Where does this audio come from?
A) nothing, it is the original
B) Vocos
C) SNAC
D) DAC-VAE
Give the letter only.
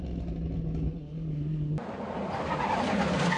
A